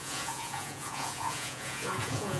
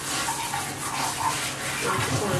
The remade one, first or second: first